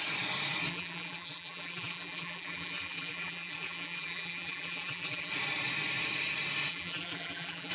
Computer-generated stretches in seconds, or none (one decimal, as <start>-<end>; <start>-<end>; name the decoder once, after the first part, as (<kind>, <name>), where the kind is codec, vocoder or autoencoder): 0.7-5.3 (vocoder, BigVGAN v2); 6.7-7.7